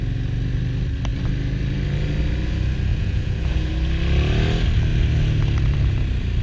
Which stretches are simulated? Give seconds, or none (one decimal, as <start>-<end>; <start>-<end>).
2.9-3.7